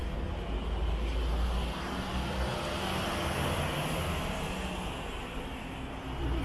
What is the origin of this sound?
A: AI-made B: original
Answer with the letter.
B